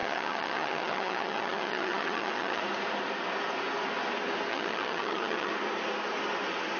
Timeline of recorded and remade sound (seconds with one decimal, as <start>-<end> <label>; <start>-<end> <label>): 0.0-2.6 remade; 2.6-4.5 recorded; 4.5-5.5 remade; 5.5-6.8 recorded